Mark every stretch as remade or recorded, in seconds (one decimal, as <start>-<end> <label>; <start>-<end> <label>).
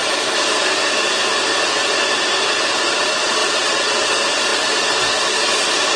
0.0-3.4 recorded; 3.4-3.9 remade; 3.9-6.0 recorded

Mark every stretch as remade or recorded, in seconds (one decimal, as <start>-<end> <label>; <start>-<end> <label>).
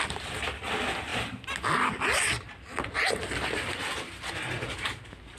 0.0-5.4 recorded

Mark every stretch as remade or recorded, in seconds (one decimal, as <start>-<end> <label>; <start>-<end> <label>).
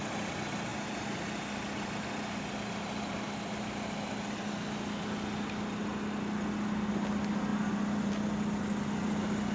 0.0-9.5 recorded